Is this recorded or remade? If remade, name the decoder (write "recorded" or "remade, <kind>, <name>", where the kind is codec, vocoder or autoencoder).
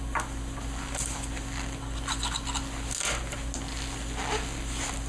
recorded